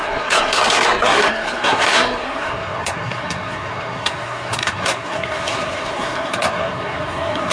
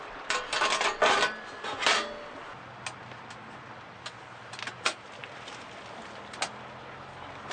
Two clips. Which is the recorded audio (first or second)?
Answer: second